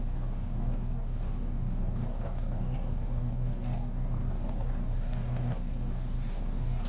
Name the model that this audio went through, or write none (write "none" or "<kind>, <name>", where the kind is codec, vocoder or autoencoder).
codec, DAC